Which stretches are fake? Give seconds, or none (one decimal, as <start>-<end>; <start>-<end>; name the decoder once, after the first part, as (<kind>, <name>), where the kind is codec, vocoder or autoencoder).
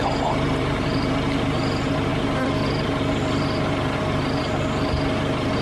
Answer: none